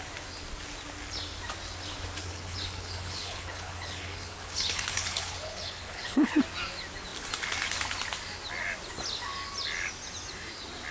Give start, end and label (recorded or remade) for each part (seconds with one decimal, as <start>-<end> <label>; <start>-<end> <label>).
0.0-2.2 recorded; 2.2-6.3 remade; 6.3-10.9 recorded